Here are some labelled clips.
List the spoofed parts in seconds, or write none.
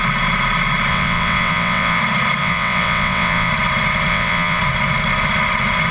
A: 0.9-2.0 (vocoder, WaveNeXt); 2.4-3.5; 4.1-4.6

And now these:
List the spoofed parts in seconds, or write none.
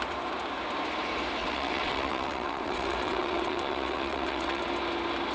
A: 1.4-4.6 (vocoder, WaveNeXt)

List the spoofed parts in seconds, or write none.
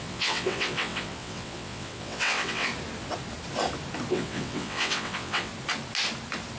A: 0.0-2.7 (vocoder, WaveNeXt); 4.1-5.5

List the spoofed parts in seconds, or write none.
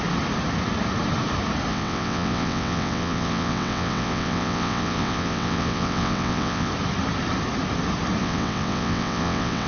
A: 1.7-6.7 (vocoder, WaveNeXt); 8.2-9.7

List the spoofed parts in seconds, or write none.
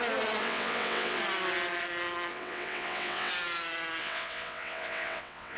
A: 0.4-1.2 (vocoder, WaveNeXt); 2.3-3.3; 4.0-5.6